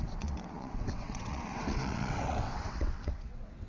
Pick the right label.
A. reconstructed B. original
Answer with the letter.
A